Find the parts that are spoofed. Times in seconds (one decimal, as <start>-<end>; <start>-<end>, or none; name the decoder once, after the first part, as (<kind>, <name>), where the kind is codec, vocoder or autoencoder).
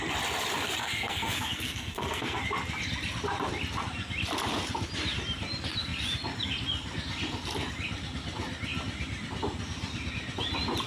0.8-2.4 (codec, SNAC)